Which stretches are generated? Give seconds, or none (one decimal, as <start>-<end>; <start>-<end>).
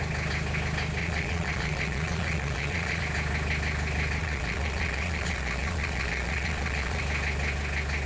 1.0-3.0; 4.2-7.0